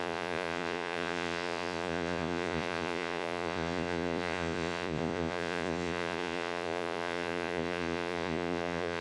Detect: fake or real fake